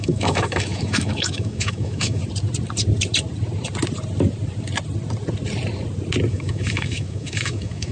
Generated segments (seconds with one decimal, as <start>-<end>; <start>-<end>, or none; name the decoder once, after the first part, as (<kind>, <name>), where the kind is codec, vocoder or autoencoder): 0.0-2.2 (autoencoder, DAC-VAE); 6.3-7.9